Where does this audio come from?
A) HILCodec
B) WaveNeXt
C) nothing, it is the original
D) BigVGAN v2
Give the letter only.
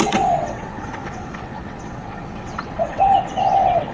B